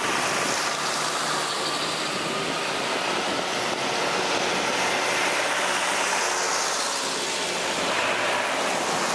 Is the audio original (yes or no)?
yes